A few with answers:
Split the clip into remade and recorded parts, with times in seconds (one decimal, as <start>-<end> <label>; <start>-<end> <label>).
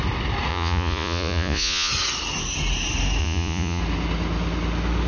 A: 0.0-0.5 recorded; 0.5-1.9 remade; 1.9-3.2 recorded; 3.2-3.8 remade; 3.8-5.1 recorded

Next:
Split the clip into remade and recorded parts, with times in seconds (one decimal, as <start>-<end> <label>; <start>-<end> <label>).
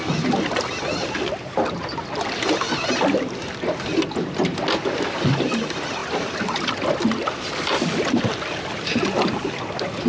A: 0.0-10.1 recorded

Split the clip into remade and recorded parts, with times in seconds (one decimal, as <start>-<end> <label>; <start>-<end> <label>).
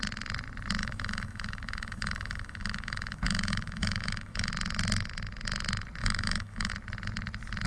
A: 0.0-0.8 recorded; 0.8-4.5 remade; 4.5-6.0 recorded; 6.0-6.7 remade; 6.7-7.7 recorded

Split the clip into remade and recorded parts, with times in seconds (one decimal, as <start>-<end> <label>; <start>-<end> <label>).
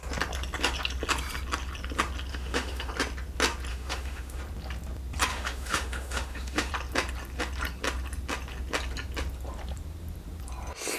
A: 0.0-2.3 recorded; 2.3-2.9 remade; 2.9-3.7 recorded; 3.7-4.4 remade; 4.4-5.3 recorded; 5.3-6.7 remade; 6.7-11.0 recorded